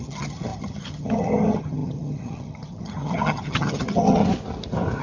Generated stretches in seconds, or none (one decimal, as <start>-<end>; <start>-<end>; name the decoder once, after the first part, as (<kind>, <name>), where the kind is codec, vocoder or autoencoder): 0.0-4.2 (vocoder, HiFi-GAN)